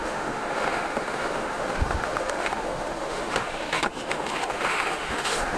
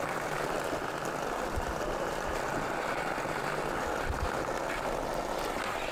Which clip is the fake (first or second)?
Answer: first